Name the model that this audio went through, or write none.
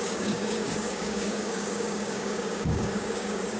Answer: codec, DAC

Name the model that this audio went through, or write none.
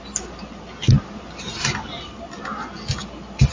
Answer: none